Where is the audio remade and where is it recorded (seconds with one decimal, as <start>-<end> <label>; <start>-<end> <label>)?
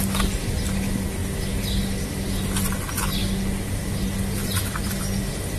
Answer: 0.0-5.6 recorded